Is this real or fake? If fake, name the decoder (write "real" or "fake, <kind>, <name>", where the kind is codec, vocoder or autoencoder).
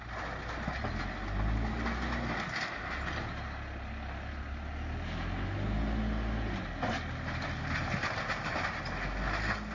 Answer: real